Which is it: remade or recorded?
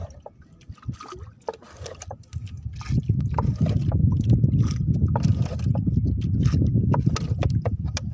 recorded